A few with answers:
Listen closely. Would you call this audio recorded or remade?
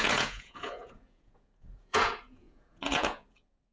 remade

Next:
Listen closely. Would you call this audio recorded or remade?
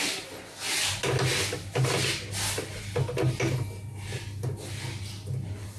recorded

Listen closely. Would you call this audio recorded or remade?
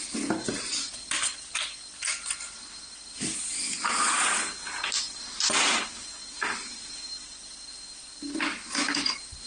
recorded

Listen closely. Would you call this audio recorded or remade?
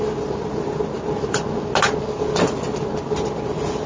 recorded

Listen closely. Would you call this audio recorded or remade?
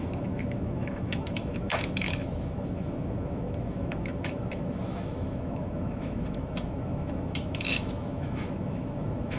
remade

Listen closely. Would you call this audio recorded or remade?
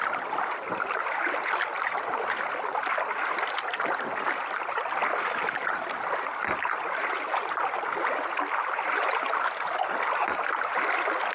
recorded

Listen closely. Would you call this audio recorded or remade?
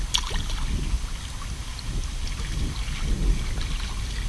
recorded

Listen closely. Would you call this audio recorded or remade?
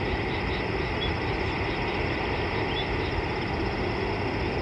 recorded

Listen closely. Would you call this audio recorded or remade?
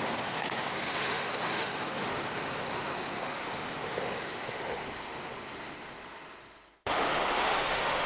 remade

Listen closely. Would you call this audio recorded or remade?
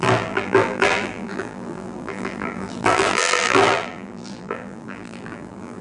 remade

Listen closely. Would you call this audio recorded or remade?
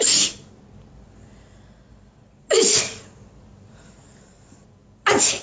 recorded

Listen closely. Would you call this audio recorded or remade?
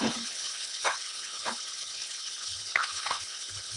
remade